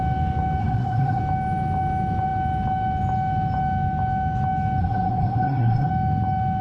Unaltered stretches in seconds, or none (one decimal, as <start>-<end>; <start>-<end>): 0.0-0.6; 1.2-4.8; 5.9-6.6